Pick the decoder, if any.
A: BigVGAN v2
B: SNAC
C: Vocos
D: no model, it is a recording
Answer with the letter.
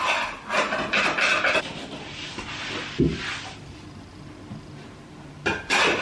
D